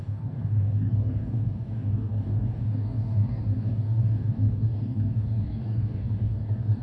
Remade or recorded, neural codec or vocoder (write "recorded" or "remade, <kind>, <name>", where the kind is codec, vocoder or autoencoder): remade, codec, DAC